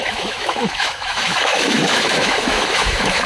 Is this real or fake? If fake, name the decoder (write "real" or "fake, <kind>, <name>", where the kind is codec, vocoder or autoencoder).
fake, autoencoder, DAC-VAE